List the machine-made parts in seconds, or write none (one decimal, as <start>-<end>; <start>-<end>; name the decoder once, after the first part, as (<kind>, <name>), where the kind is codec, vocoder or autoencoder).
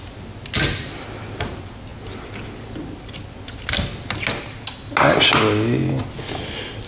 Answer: none